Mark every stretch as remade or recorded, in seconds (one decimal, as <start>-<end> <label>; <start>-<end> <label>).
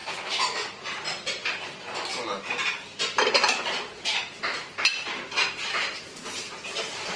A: 0.0-1.3 recorded; 1.3-7.2 remade